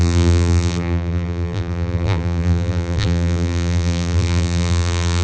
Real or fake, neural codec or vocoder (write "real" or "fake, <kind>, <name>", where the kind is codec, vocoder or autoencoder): fake, vocoder, BigVGAN v2